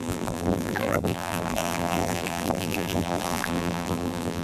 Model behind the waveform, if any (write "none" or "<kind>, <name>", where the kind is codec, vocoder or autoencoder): vocoder, BigVGAN v2